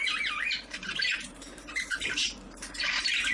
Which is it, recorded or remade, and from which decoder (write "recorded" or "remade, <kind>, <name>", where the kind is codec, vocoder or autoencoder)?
remade, vocoder, BigVGAN v2